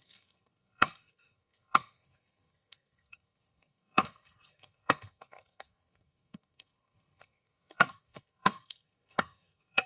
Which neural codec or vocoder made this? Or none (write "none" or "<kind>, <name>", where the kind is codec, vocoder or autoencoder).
codec, SNAC